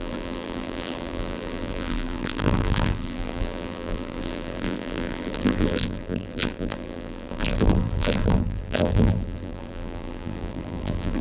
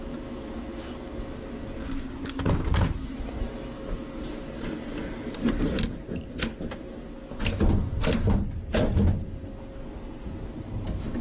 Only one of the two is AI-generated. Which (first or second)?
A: first